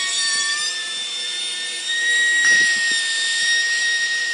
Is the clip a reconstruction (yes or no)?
yes